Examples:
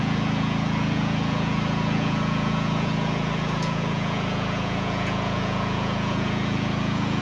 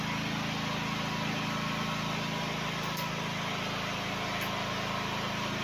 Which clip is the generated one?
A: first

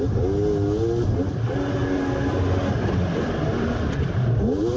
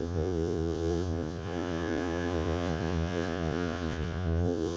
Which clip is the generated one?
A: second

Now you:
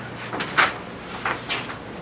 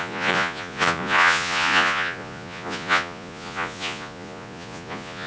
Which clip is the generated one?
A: second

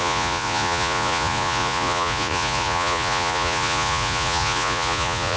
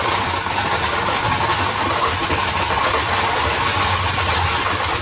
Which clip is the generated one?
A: first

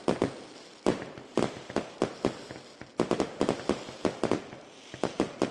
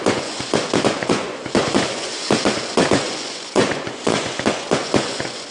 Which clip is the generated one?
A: second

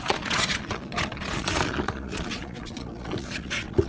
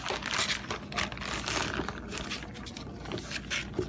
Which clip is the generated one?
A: first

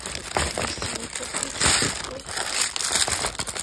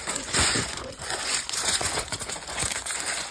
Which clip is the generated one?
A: second